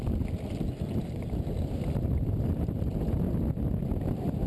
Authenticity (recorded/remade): remade